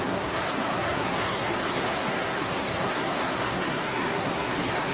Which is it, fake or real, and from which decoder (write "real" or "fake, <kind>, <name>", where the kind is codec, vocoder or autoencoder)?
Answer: fake, codec, SNAC